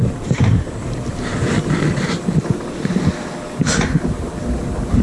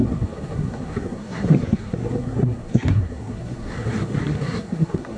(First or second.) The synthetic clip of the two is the second